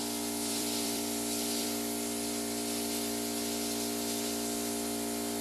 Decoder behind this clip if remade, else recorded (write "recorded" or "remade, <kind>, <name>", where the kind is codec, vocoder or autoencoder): remade, vocoder, BigVGAN v2